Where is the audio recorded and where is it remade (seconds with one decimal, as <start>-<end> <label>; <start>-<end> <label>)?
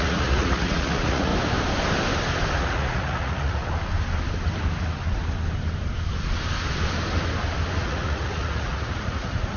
0.0-1.3 remade; 1.3-2.6 recorded; 2.6-3.6 remade; 3.6-7.8 recorded; 7.8-9.6 remade